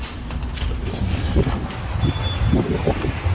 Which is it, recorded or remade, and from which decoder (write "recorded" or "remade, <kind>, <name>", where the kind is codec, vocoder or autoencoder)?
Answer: recorded